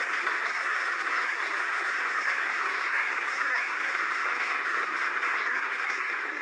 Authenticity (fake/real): fake